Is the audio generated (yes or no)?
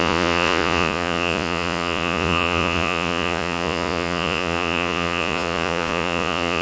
yes